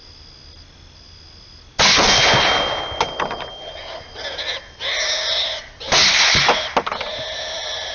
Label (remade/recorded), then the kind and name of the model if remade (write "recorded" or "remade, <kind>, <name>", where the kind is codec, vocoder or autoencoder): recorded